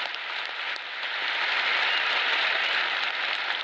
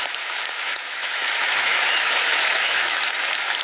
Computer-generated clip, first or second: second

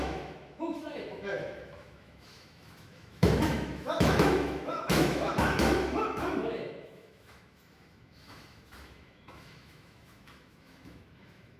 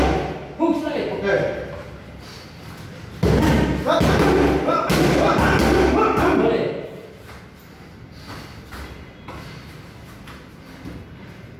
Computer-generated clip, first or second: first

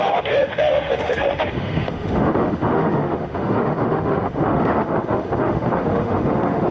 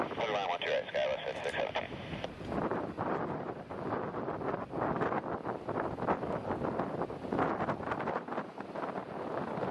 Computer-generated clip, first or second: first